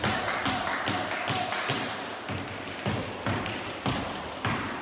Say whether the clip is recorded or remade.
recorded